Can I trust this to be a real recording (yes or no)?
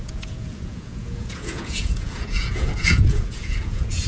no